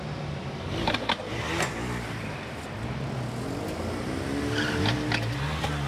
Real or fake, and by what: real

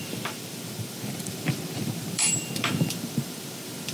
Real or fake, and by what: fake, vocoder, BigVGAN v2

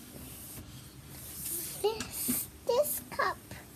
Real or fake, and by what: real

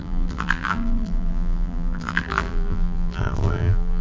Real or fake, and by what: fake, vocoder, BigVGAN v2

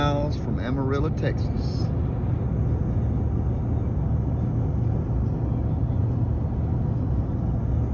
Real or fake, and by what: real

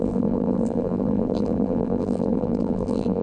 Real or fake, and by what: fake, vocoder, BigVGAN v2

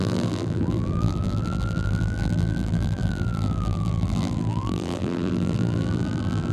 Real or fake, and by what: fake, vocoder, BigVGAN v2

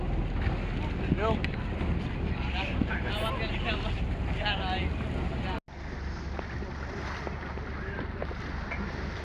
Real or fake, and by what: real